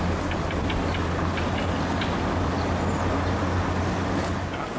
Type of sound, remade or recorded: recorded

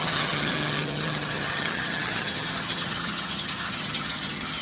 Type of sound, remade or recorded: remade